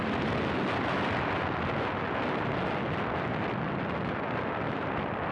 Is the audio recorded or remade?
recorded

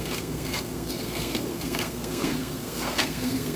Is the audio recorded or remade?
remade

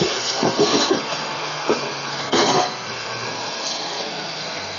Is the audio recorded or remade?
remade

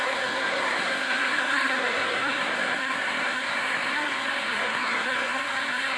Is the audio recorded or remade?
remade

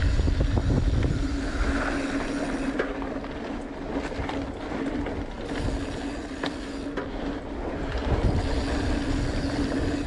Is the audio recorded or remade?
recorded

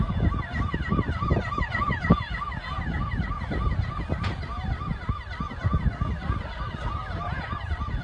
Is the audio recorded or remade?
recorded